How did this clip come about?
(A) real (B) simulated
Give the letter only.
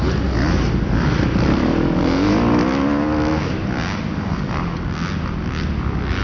A